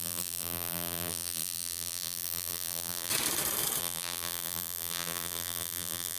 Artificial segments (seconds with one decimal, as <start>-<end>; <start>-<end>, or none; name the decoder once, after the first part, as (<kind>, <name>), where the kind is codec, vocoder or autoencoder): 0.0-3.1 (vocoder, BigVGAN v2); 3.8-6.2